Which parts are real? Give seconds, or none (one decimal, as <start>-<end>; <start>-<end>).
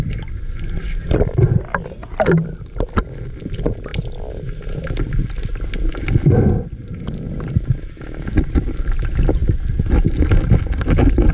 0.0-11.3